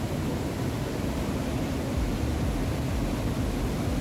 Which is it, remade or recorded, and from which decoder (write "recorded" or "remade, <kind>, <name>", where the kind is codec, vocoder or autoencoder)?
recorded